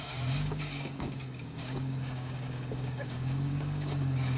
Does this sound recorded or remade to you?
remade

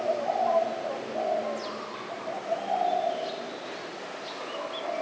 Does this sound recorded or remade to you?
recorded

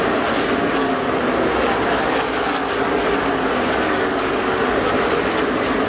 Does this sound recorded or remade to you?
recorded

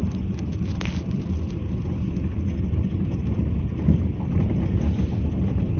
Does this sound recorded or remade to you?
recorded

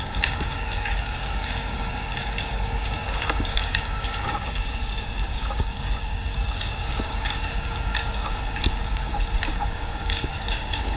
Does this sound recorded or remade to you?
remade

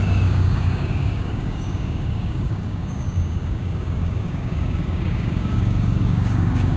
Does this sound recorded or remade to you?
remade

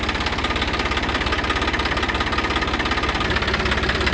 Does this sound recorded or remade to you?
recorded